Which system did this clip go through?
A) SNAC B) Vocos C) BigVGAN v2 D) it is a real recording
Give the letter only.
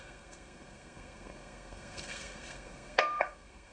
A